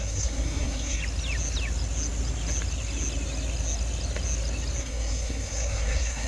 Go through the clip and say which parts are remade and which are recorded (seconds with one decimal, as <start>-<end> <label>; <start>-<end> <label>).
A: 0.0-1.0 remade; 1.0-4.8 recorded; 4.8-6.3 remade